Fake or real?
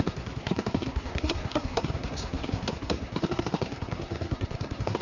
fake